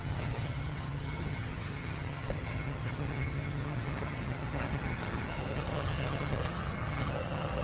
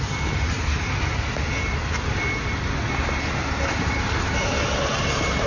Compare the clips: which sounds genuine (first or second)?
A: second